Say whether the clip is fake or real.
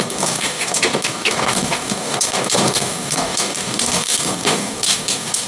fake